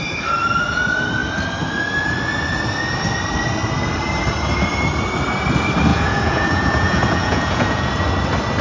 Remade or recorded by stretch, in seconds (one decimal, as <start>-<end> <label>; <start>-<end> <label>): 0.0-5.9 recorded; 5.9-7.9 remade; 7.9-8.6 recorded